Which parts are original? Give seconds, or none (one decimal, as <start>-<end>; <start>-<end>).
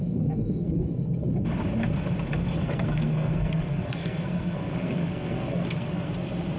0.9-2.6; 6.1-6.6